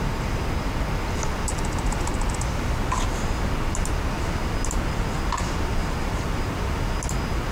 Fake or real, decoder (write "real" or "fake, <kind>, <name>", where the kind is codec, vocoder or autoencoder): real